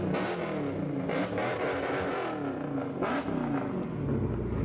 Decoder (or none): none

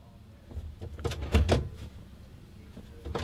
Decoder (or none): none